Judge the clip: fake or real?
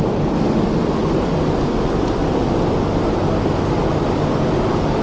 real